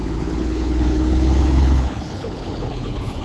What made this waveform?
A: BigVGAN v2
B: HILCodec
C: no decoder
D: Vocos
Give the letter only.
B